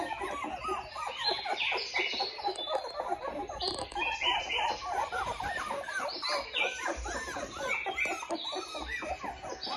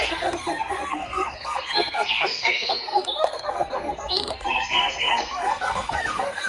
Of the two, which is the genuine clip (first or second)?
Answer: first